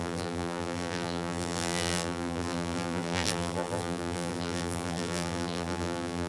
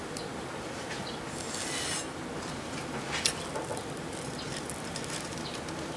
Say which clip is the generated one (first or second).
first